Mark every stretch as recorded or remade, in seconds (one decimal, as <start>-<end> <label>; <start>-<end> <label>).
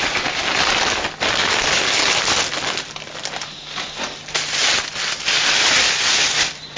0.0-6.8 recorded